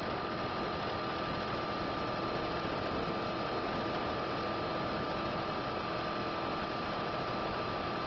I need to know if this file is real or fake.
real